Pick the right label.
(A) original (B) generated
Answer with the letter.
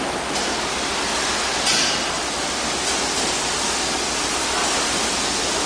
A